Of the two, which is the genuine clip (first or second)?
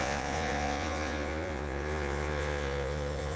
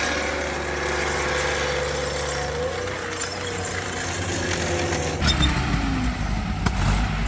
second